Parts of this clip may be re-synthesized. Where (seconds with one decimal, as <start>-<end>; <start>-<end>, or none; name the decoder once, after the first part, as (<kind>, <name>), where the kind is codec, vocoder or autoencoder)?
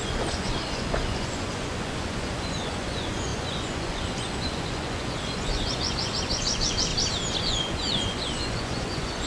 0.0-6.9 (vocoder, Vocos); 7.4-9.3